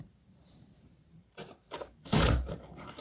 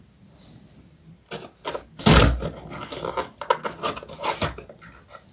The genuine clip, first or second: second